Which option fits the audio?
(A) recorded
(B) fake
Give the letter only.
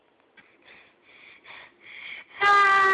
A